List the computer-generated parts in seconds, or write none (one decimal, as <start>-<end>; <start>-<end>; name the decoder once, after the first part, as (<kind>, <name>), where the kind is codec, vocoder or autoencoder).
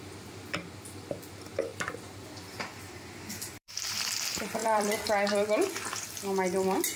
1.7-3.9 (vocoder, BigVGAN v2); 4.6-6.2